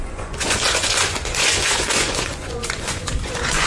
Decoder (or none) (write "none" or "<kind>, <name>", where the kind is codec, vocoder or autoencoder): vocoder, Vocos